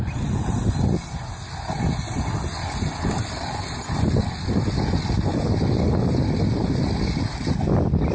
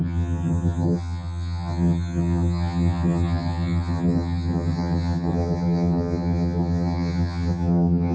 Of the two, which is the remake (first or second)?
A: second